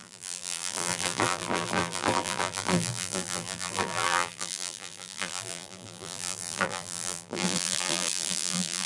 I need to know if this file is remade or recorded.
remade